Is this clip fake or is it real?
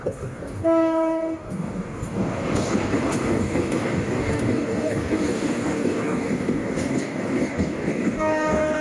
fake